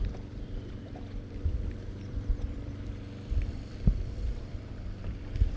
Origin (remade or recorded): remade